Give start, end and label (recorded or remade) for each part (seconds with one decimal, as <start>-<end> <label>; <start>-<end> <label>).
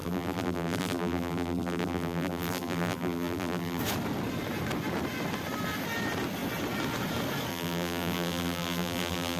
0.0-3.8 remade; 3.8-7.5 recorded; 7.5-9.4 remade